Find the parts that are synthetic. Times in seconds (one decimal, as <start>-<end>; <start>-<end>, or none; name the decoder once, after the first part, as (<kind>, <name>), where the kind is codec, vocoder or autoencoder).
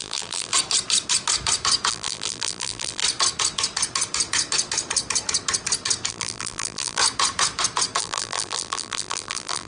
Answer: 0.0-0.5 (vocoder, BigVGAN v2); 1.9-3.0; 6.1-7.0; 8.0-9.7